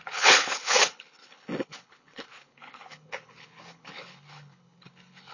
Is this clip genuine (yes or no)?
no